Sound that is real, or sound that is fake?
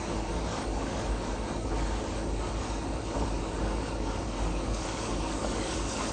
fake